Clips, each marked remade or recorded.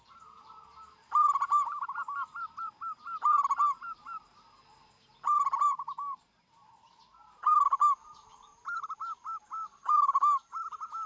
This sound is remade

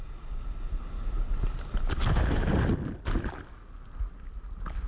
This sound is recorded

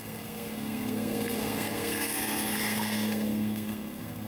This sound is remade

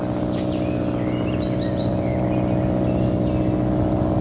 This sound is recorded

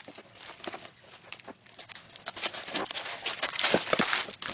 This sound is recorded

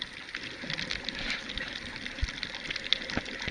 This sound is recorded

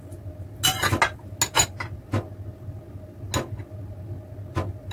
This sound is recorded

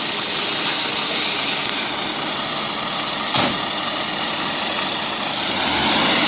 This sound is recorded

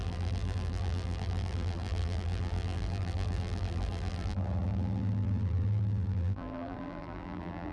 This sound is remade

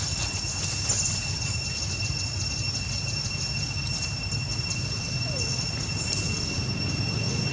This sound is recorded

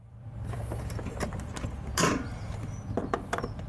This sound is remade